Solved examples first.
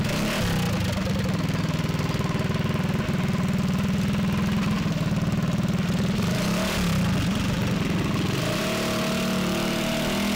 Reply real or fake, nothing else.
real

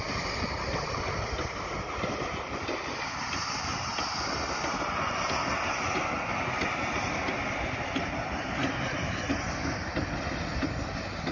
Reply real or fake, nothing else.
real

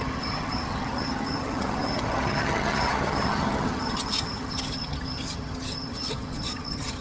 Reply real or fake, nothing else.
fake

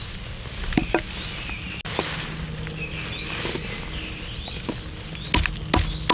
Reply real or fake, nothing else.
real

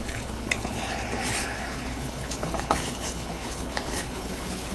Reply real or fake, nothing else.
fake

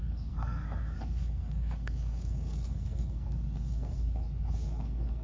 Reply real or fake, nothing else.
fake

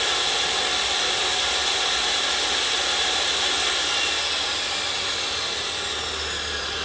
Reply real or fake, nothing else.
real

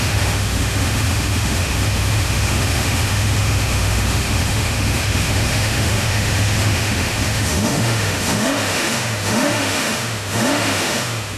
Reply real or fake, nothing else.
fake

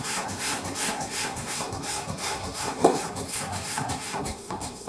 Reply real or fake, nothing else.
fake